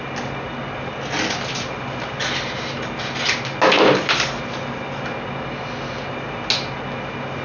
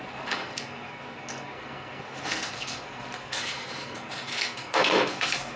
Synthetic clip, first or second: second